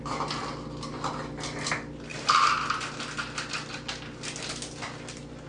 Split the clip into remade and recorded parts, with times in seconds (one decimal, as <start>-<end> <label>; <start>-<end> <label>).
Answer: 0.0-5.5 recorded